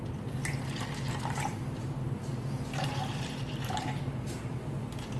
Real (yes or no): yes